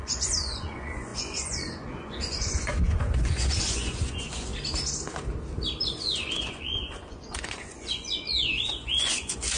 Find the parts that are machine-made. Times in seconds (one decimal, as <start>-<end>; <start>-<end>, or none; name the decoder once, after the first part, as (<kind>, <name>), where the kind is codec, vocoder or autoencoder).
0.0-4.5 (vocoder, Vocos); 5.8-9.6